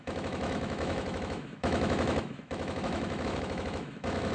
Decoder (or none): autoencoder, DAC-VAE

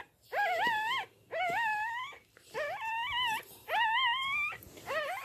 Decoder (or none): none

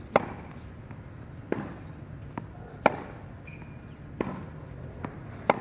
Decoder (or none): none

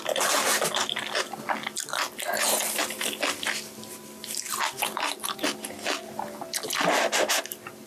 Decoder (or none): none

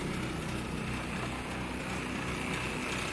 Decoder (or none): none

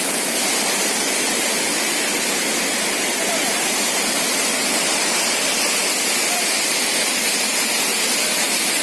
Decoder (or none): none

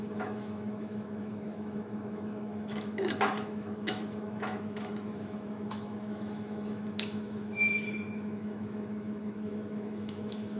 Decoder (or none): autoencoder, DAC-VAE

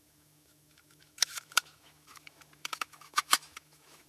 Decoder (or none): autoencoder, DAC-VAE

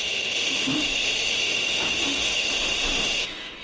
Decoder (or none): autoencoder, DAC-VAE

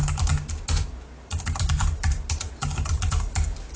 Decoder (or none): none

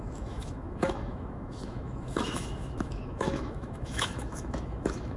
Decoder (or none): autoencoder, DAC-VAE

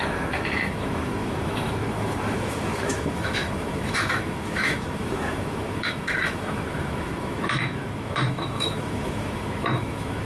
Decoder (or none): autoencoder, DAC-VAE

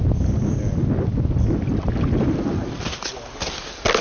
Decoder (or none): none